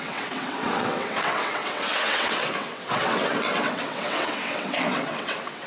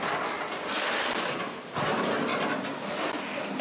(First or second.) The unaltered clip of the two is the second